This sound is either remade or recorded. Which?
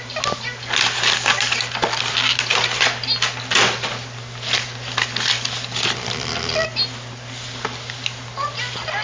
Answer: recorded